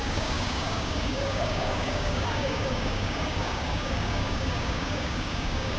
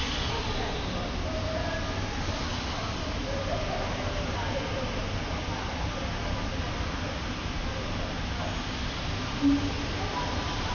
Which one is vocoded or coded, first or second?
first